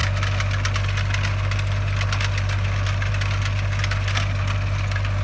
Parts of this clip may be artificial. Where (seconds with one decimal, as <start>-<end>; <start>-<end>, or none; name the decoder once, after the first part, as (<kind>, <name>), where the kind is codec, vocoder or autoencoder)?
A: none